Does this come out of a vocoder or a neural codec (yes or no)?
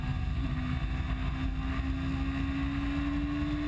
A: no